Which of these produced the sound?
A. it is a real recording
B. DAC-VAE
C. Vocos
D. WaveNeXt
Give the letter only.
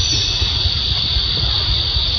A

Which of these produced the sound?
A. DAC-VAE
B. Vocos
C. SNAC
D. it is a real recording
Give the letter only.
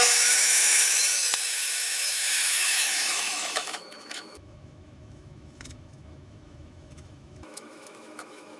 A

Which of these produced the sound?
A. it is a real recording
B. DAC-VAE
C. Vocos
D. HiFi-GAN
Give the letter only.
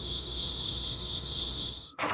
B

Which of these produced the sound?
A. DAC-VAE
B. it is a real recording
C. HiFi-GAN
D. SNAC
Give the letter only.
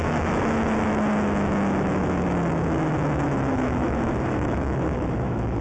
A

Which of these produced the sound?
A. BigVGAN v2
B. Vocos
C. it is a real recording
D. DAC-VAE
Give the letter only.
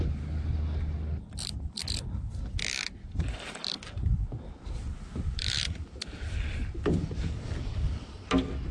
C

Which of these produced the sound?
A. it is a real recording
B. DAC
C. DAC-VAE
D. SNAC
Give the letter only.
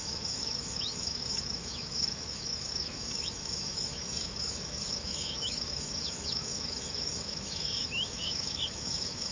C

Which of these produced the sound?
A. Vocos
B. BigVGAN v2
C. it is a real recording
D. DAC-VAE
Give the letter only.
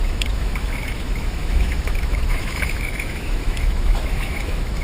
D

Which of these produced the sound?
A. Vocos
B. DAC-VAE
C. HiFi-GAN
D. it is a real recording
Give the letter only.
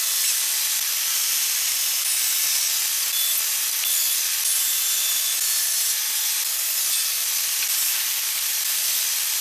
D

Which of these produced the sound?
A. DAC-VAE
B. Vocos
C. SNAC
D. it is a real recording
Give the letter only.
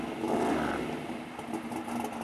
D